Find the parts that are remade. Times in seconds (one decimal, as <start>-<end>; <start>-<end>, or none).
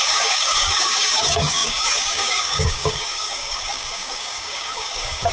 0.0-5.3